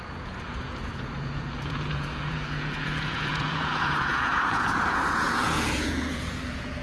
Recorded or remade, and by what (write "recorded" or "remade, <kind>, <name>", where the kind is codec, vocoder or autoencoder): remade, vocoder, Vocos